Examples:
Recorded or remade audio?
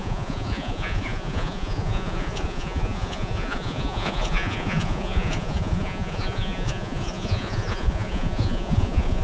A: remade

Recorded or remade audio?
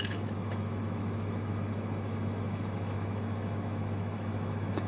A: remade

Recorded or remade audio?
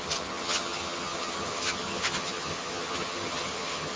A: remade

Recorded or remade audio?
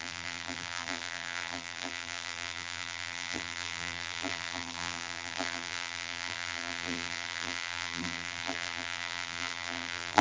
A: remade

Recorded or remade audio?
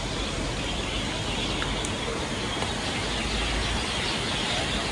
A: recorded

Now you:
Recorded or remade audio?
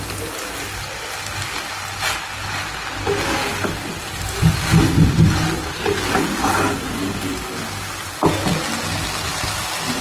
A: recorded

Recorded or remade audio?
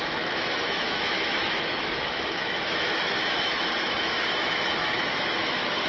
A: remade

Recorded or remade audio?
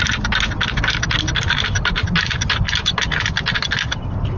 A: recorded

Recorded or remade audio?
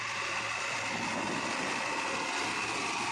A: recorded